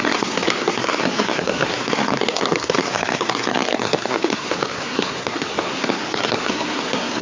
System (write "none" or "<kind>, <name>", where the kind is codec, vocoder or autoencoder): codec, SNAC